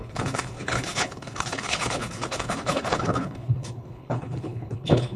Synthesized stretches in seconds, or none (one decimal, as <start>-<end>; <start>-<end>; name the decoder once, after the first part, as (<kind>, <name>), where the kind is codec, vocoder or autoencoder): 0.0-5.2 (codec, HILCodec)